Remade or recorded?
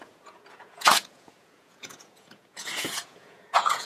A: remade